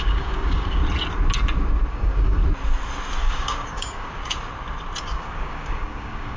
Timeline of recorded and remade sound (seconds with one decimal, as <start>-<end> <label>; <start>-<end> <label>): 0.0-0.8 remade; 0.8-1.9 recorded; 1.9-2.4 remade; 2.4-3.2 recorded; 3.2-4.2 remade; 4.2-5.0 recorded; 5.0-6.4 remade